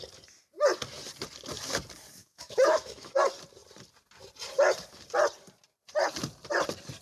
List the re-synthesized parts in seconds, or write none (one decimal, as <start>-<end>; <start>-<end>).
2.2-3.2